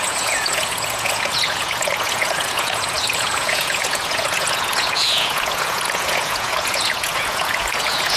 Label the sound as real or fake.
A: fake